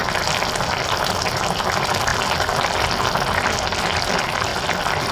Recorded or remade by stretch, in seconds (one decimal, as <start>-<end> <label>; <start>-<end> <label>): 0.0-5.1 recorded